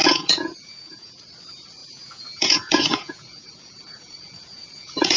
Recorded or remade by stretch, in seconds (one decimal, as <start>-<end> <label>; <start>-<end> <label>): 0.0-1.2 remade; 1.2-1.8 recorded; 1.8-5.2 remade